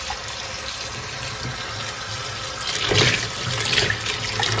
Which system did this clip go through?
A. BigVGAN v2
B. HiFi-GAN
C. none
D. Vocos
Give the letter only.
C